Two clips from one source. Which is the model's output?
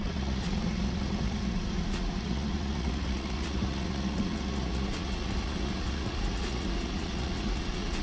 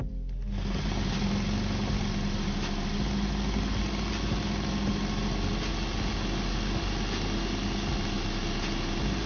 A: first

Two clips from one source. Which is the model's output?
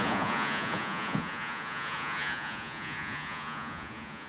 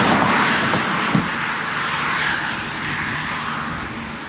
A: first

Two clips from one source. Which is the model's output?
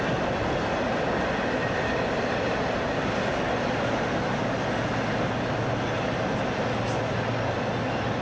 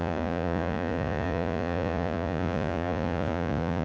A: second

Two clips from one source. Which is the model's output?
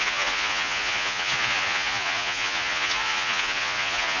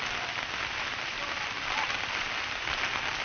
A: first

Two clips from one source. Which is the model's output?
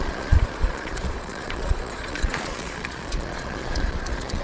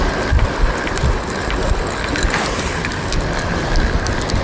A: first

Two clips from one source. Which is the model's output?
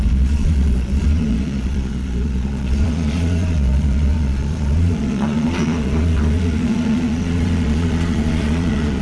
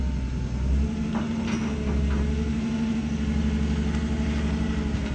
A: first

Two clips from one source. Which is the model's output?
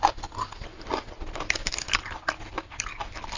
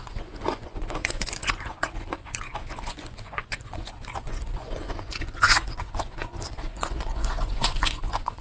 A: second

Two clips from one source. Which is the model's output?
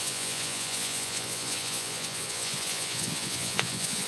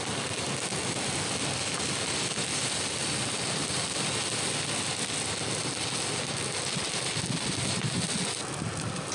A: first